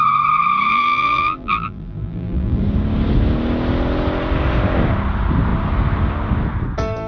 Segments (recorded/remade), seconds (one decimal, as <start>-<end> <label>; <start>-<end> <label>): 0.0-0.7 recorded; 0.7-2.6 remade; 2.6-7.1 recorded